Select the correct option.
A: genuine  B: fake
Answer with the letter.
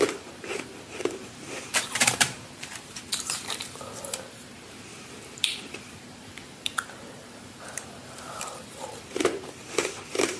B